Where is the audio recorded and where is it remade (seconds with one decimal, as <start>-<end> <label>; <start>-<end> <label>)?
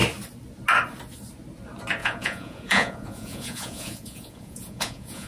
0.0-2.0 recorded; 2.0-5.3 remade